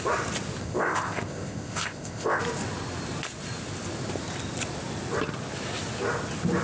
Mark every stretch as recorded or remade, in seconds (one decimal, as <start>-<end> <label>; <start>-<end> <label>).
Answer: 0.0-0.6 recorded; 0.6-2.4 remade; 2.4-6.6 recorded